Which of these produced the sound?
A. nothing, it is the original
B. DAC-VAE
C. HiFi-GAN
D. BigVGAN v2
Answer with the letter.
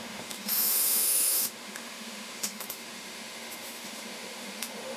B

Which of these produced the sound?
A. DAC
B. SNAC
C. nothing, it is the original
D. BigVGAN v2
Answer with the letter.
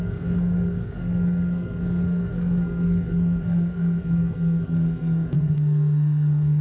B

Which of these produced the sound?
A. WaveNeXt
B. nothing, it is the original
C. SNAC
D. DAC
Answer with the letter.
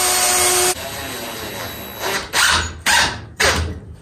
B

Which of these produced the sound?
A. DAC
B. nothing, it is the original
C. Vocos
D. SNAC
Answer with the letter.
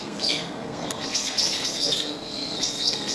D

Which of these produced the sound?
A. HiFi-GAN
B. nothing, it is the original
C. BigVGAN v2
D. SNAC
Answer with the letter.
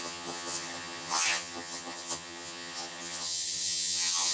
A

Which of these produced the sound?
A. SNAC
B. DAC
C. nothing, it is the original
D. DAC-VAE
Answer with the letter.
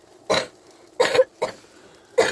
C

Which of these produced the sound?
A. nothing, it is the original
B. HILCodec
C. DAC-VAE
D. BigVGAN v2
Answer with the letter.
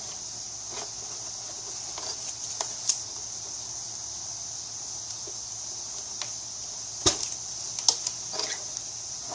A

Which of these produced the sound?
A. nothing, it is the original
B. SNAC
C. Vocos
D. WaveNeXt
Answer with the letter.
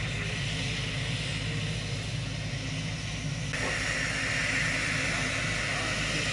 A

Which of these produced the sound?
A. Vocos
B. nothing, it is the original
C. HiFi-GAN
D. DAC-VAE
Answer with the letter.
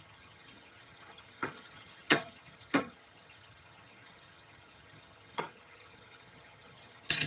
C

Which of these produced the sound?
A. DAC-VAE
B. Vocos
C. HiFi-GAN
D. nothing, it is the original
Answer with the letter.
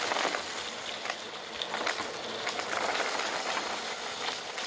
D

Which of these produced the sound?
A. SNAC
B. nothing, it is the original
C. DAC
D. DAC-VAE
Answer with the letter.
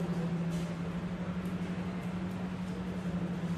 B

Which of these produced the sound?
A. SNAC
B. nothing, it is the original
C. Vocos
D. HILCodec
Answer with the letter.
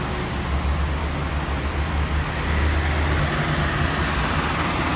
B